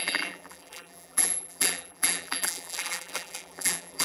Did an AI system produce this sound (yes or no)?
yes